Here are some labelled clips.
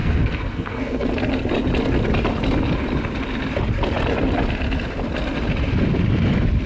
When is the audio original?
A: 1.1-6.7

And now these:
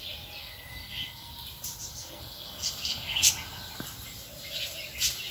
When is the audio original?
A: 0.0-0.4; 1.3-1.9; 3.3-5.3

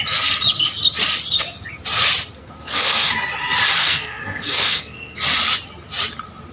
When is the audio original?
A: 0.0-2.4; 3.1-3.8; 5.2-6.5